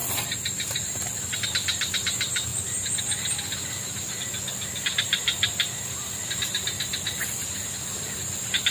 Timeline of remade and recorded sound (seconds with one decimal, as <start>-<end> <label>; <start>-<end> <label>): 0.0-8.7 recorded